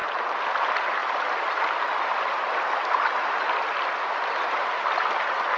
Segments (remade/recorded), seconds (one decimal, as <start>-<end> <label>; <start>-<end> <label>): 0.0-5.6 recorded